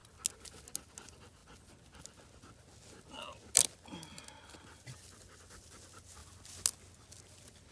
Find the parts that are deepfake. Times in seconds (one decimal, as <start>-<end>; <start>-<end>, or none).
none